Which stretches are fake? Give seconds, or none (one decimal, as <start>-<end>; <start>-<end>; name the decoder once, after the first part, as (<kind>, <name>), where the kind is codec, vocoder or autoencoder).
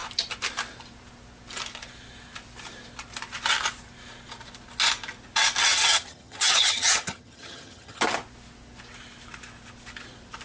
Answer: 5.6-8.0 (vocoder, HiFi-GAN)